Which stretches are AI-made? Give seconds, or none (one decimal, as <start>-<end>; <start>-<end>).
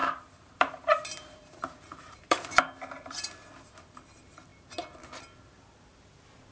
0.0-2.6